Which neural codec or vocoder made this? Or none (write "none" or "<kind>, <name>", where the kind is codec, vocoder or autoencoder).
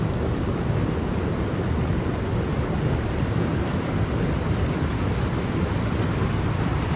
none